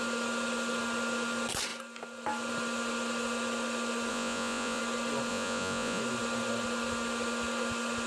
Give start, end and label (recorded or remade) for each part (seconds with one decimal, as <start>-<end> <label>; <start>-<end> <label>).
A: 0.0-4.1 recorded; 4.1-4.8 remade; 4.8-5.3 recorded; 5.3-6.0 remade; 6.0-8.1 recorded